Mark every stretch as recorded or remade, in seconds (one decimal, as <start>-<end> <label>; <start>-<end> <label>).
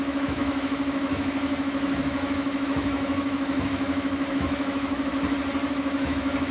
0.0-5.1 remade; 5.1-5.7 recorded; 5.7-6.5 remade